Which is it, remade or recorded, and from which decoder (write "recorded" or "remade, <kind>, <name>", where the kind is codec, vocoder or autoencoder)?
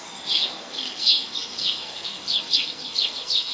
remade, codec, SNAC